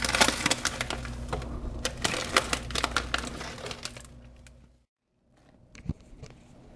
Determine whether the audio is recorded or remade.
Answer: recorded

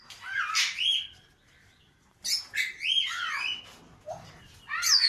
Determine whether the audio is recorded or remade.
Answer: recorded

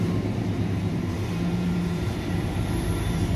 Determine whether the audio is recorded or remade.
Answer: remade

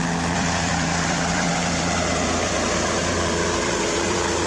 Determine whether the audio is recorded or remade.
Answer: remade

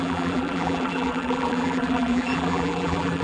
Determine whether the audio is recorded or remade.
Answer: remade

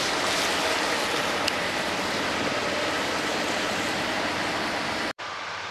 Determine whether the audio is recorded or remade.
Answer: remade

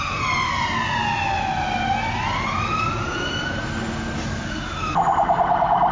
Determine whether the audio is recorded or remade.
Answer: recorded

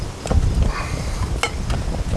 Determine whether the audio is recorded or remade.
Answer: recorded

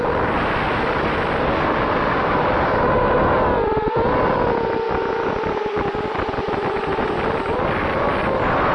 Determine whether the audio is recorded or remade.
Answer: remade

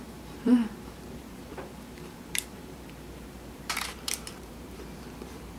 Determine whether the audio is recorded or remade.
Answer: remade